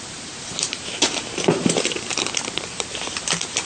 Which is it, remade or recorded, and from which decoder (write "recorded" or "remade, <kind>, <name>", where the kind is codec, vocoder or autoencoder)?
remade, vocoder, BigVGAN v2